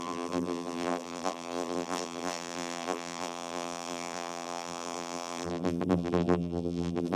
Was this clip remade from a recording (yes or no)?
yes